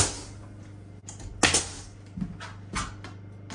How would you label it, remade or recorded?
recorded